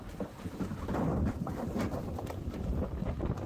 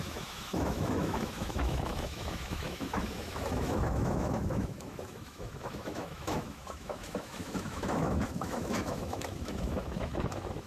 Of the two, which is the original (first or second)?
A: first